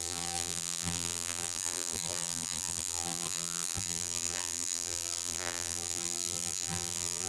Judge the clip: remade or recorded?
remade